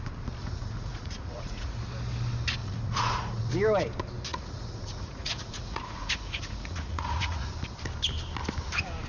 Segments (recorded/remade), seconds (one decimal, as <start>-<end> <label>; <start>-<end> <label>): 0.0-0.4 recorded; 0.4-1.8 remade; 1.8-2.6 recorded; 2.6-3.5 remade; 3.5-4.3 recorded; 4.3-7.5 remade; 7.5-9.1 recorded